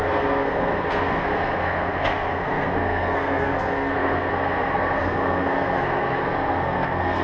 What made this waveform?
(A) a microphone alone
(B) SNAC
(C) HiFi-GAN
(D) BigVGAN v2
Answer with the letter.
B